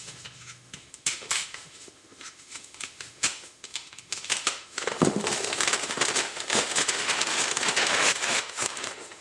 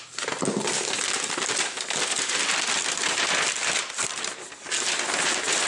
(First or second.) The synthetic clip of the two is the first